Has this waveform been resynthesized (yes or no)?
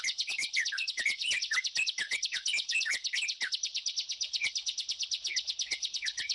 yes